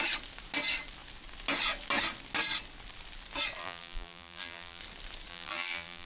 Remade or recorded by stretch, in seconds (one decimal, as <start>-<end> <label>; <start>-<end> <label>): 0.0-3.6 recorded; 3.6-4.8 remade; 4.8-5.3 recorded; 5.3-6.1 remade